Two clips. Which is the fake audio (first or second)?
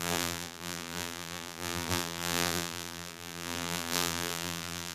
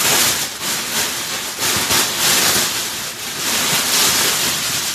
first